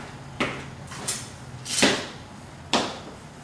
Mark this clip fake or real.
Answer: real